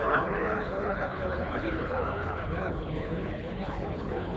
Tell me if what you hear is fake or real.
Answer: fake